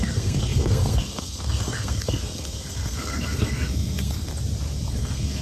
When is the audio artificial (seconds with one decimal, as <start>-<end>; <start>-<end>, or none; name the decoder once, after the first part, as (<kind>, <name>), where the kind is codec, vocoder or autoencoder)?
0.0-4.3 (codec, SNAC); 4.9-5.4